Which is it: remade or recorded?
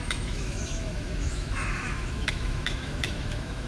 remade